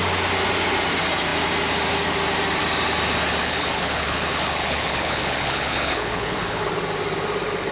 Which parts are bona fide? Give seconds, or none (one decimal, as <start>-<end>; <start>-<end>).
0.0-3.4; 6.7-7.7